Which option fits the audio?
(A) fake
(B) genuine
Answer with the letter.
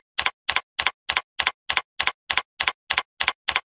B